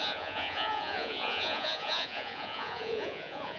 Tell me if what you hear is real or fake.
fake